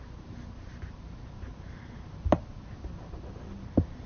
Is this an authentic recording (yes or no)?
yes